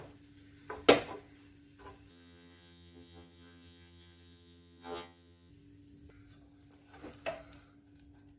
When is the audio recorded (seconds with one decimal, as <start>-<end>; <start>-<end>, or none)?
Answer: 0.0-2.1; 5.5-8.4